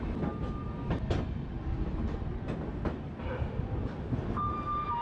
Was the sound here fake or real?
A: real